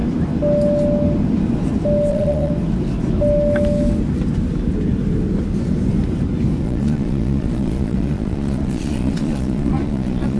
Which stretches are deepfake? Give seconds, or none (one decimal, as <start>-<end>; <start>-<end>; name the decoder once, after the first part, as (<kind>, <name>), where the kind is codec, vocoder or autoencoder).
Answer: 2.1-2.5 (vocoder, Vocos); 6.6-10.4